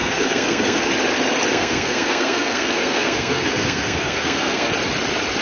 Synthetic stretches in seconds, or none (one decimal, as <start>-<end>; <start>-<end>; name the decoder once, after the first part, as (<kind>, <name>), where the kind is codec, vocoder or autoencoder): 0.0-0.9 (codec, SNAC); 1.5-4.7